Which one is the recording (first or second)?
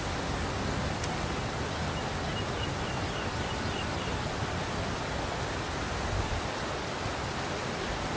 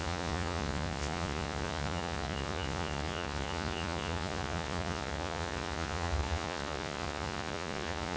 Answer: first